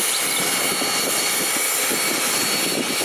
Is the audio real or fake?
real